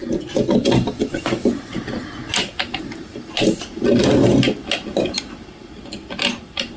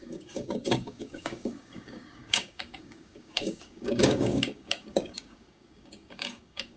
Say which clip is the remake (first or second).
second